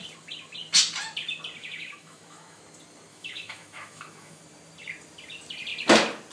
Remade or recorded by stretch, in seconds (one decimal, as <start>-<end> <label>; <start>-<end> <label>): 0.0-1.6 recorded; 1.6-2.6 remade; 2.6-3.1 recorded; 3.1-4.4 remade; 4.4-6.3 recorded